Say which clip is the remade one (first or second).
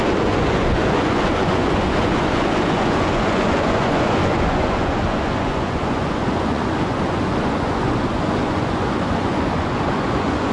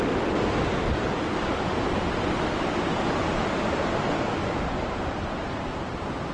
first